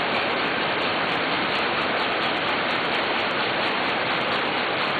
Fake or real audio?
fake